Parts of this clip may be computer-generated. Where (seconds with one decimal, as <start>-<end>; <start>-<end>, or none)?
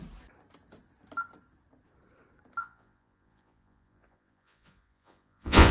2.6-5.7